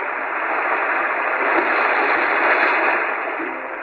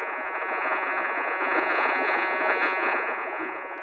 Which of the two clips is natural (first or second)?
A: first